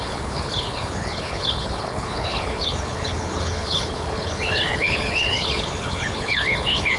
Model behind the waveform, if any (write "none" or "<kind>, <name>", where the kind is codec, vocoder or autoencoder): codec, HILCodec